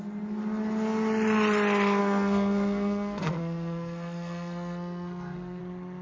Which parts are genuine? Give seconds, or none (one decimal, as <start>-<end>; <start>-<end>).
0.0-2.0; 5.6-6.0